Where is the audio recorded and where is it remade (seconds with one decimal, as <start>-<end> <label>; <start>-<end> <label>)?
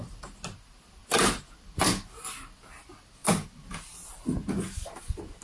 0.0-5.4 recorded